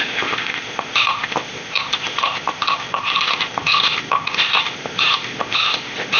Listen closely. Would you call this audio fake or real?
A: fake